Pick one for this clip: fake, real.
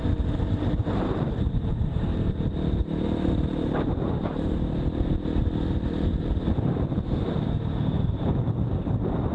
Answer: fake